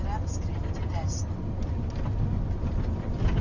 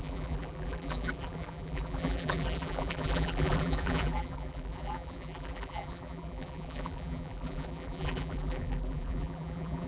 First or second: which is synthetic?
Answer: second